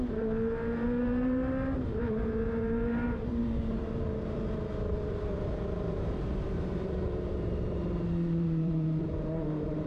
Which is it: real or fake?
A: fake